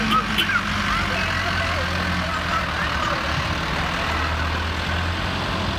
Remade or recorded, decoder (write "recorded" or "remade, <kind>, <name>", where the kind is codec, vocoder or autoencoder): recorded